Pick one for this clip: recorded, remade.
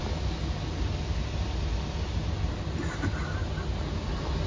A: recorded